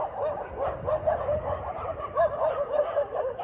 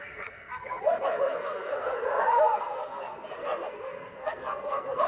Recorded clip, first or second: first